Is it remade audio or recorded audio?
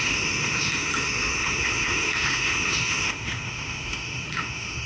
remade